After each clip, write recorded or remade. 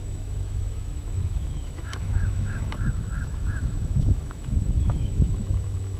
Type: remade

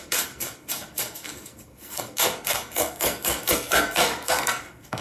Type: remade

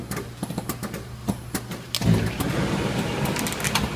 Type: recorded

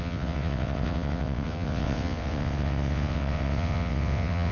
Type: remade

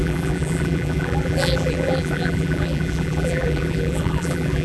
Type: remade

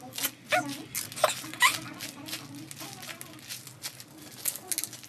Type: recorded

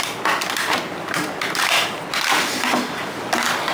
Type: recorded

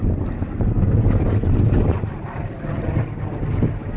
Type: recorded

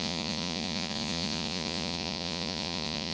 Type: remade